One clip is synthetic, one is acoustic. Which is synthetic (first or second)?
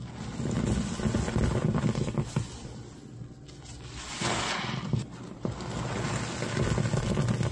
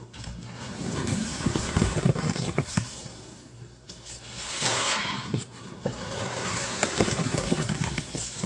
second